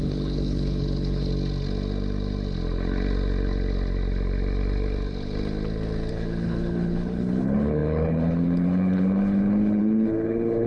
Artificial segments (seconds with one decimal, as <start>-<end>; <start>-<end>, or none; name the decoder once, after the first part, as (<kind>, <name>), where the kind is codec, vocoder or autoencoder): 0.0-1.3 (codec, HILCodec); 6.1-10.7